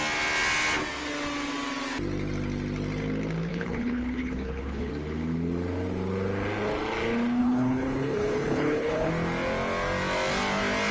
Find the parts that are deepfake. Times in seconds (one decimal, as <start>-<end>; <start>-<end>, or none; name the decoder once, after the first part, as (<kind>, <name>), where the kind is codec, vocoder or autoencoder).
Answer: 3.5-4.9 (codec, HILCodec); 7.4-9.1